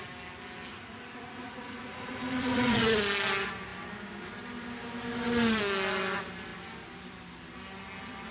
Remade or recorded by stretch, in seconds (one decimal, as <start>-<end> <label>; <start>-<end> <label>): 0.0-0.7 recorded; 0.7-3.0 remade; 3.0-8.3 recorded